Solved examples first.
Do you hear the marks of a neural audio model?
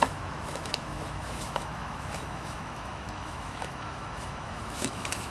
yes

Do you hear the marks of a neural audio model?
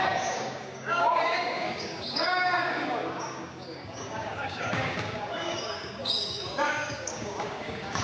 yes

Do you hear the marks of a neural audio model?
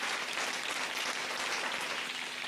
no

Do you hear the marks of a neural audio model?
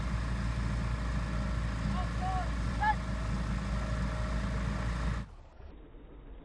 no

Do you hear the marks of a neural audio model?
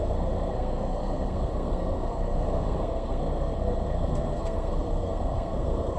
yes